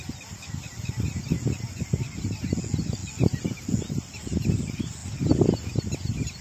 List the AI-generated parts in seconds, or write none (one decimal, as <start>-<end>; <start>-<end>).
none